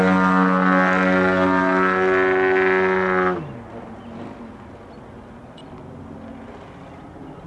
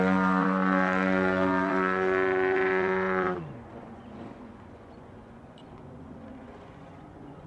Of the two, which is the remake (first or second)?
second